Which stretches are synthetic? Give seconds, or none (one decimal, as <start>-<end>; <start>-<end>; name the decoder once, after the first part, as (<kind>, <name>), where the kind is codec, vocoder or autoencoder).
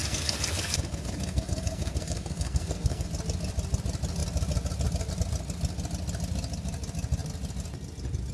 0.0-3.1 (codec, SNAC)